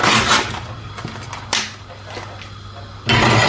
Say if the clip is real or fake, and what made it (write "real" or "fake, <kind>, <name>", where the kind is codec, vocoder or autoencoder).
real